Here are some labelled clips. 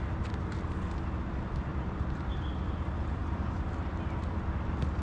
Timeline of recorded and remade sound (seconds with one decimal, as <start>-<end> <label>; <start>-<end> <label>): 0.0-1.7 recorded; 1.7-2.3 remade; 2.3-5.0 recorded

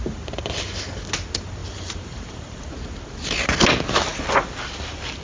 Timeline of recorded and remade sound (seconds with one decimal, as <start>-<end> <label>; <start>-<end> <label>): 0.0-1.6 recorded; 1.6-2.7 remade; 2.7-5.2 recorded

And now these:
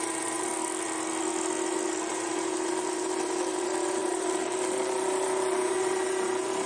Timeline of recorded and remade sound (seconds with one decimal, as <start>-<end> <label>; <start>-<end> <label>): 0.0-0.5 remade; 0.5-2.1 recorded; 2.1-6.7 remade

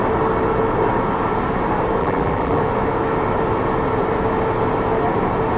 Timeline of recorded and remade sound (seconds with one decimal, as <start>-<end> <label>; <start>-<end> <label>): 0.0-2.0 recorded; 2.0-2.6 remade; 2.6-5.6 recorded